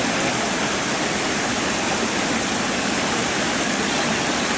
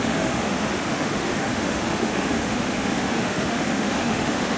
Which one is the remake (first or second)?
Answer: second